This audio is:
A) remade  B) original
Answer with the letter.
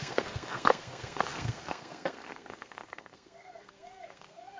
A